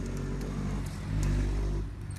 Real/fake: real